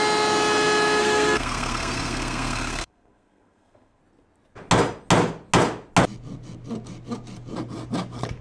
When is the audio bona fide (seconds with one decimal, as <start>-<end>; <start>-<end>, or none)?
0.0-1.0; 4.0-8.4